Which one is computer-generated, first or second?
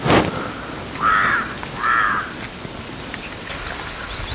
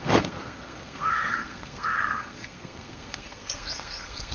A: second